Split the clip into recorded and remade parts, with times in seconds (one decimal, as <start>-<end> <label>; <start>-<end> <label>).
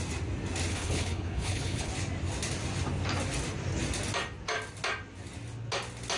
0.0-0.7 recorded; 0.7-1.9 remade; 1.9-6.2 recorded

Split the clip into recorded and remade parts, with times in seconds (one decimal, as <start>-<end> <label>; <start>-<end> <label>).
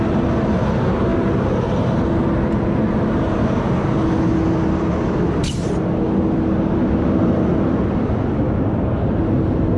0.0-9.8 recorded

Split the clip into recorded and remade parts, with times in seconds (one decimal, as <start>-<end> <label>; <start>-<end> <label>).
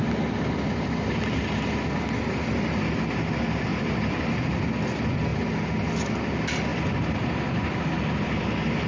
0.0-3.7 recorded; 3.7-4.4 remade; 4.4-6.7 recorded; 6.7-8.9 remade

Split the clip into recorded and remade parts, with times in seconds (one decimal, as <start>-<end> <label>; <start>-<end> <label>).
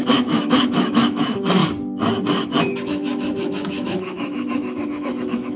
0.0-1.6 remade; 1.6-2.6 recorded; 2.6-5.6 remade